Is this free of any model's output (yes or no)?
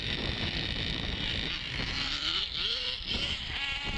no